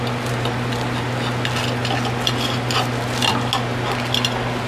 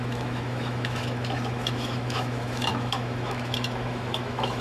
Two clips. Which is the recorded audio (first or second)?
first